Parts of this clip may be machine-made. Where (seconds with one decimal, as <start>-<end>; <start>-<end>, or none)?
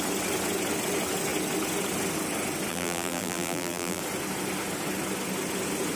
2.7-4.0